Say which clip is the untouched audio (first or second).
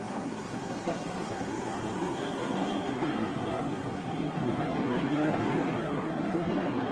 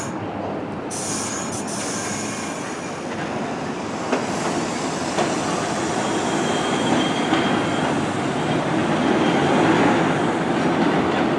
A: second